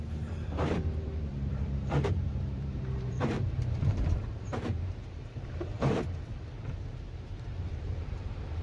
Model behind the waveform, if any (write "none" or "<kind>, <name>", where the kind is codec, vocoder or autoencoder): vocoder, BigVGAN v2